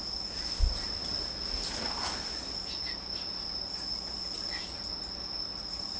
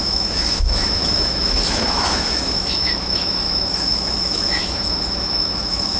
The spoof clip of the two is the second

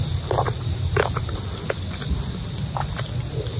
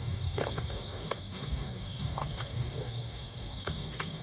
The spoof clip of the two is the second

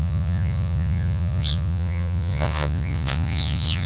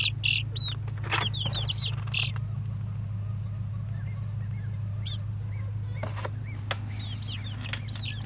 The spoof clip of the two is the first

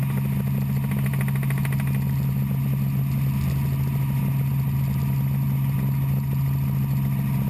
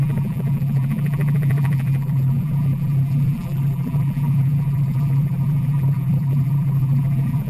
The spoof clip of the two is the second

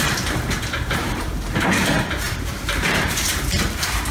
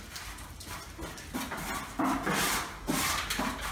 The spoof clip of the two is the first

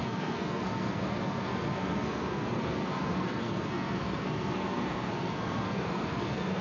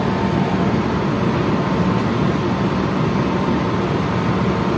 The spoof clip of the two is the first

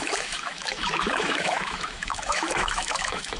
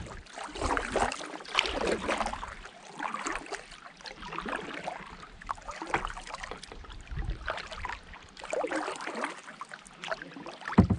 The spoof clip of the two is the first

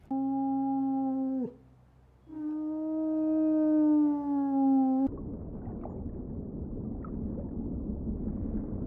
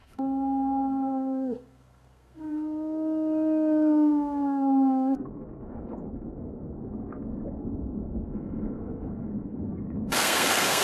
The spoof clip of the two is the second